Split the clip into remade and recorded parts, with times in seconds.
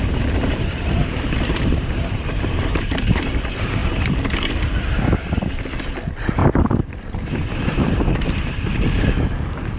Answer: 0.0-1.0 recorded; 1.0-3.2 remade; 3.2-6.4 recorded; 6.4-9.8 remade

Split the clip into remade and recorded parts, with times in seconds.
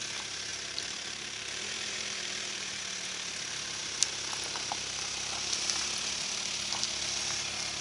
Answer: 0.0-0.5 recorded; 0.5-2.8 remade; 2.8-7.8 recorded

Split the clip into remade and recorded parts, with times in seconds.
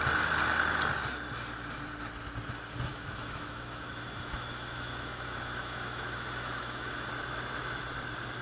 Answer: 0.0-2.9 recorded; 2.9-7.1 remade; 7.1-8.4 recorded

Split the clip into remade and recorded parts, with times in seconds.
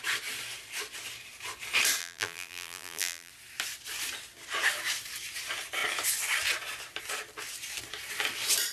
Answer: 0.0-2.0 recorded; 2.0-3.3 remade; 3.3-8.7 recorded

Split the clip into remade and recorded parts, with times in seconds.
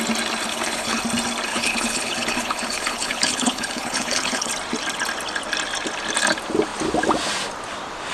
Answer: 0.0-0.5 recorded; 0.5-1.0 remade; 1.0-1.5 recorded; 1.5-4.5 remade; 4.5-8.1 recorded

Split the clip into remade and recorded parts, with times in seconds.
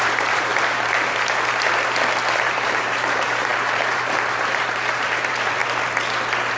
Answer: 0.0-0.5 remade; 0.5-2.4 recorded; 2.4-5.6 remade; 5.6-6.6 recorded